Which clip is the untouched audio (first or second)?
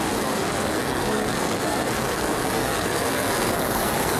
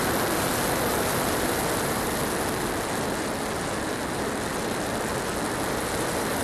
second